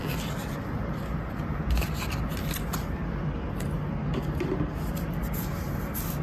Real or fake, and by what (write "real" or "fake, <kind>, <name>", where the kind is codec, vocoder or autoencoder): real